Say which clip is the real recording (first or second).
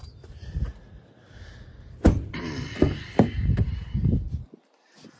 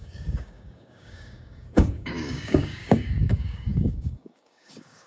first